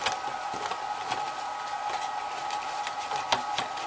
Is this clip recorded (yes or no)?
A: yes